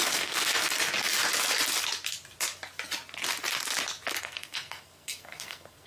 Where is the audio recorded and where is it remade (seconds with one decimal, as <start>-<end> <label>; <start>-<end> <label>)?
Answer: 0.0-0.7 remade; 0.7-4.2 recorded; 4.2-5.9 remade